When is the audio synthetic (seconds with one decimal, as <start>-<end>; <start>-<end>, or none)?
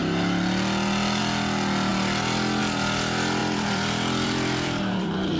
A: 3.4-5.4